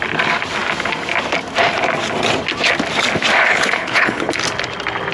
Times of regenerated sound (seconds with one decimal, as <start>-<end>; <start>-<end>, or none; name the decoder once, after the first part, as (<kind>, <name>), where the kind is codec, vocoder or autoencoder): 3.5-4.3 (codec, HILCodec)